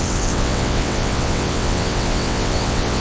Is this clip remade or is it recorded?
remade